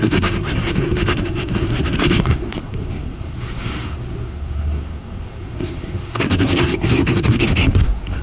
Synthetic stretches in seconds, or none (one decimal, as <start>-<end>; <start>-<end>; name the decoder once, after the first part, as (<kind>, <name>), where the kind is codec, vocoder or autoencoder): 0.0-8.2 (codec, SNAC)